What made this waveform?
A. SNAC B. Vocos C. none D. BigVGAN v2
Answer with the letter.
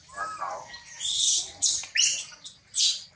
C